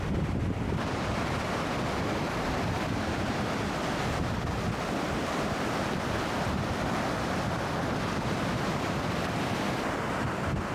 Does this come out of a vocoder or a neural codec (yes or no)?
no